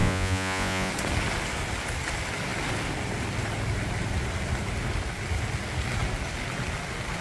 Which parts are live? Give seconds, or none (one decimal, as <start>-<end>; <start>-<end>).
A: 0.9-7.2